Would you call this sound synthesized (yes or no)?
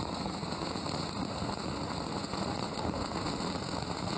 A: yes